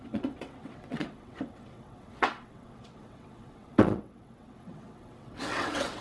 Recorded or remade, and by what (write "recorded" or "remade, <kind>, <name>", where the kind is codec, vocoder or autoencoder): remade, vocoder, WaveNeXt